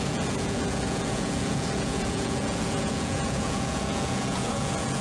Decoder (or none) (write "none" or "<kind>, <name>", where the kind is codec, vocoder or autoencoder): vocoder, Vocos